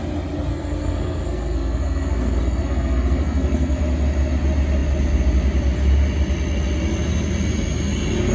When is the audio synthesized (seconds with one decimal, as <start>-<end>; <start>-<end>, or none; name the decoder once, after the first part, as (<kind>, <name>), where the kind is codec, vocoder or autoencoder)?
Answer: 0.5-3.8 (codec, SNAC)